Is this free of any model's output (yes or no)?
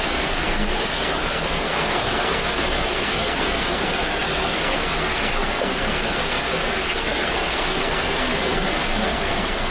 no